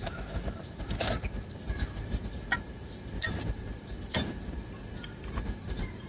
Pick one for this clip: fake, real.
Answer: fake